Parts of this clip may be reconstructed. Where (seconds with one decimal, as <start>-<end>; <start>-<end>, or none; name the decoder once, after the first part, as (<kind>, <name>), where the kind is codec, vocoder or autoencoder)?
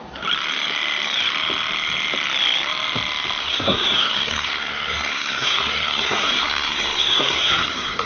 3.4-8.1 (codec, SNAC)